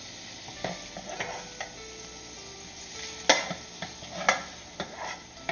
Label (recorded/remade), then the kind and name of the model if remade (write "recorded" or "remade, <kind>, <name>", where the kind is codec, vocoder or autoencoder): recorded